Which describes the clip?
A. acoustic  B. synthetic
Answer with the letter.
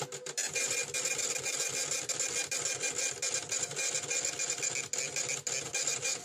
A